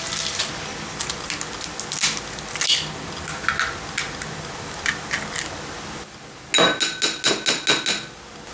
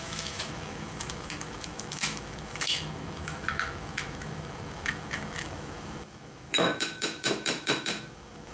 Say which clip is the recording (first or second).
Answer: first